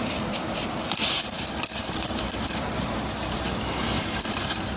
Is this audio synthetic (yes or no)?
no